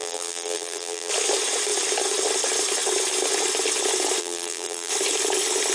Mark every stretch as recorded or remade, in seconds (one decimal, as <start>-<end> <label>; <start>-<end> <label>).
0.0-1.1 remade; 1.1-4.2 recorded; 4.2-4.9 remade; 4.9-5.7 recorded